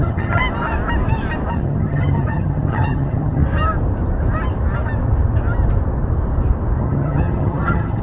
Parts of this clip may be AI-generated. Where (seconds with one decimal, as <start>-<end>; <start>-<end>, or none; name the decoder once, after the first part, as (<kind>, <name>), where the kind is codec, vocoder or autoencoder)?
0.0-0.4 (vocoder, HiFi-GAN); 1.5-3.4; 6.8-8.0